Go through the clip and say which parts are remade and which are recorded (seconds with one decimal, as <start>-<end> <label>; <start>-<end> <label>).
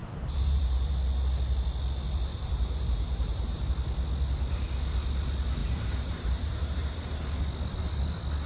0.0-0.9 remade; 0.9-2.3 recorded; 2.3-3.7 remade; 3.7-5.6 recorded; 5.6-7.2 remade; 7.2-8.5 recorded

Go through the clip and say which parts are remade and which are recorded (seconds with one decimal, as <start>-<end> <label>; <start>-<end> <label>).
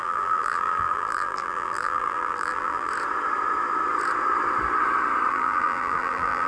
0.0-2.9 remade; 2.9-5.3 recorded; 5.3-6.5 remade